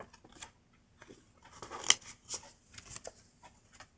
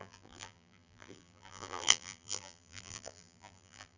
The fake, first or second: second